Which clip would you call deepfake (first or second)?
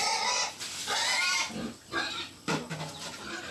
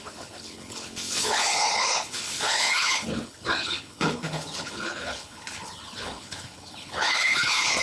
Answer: second